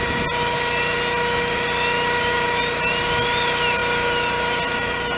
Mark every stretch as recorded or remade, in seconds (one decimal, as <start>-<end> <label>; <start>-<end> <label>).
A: 0.0-5.2 recorded